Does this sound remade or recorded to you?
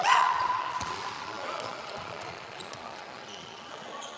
remade